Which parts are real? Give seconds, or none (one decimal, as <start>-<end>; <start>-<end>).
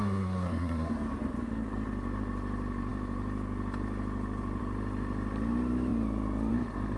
0.9-7.0